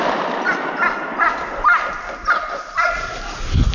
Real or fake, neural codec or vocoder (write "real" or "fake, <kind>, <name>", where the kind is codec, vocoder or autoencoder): real